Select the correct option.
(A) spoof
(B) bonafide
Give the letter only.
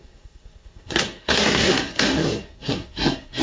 A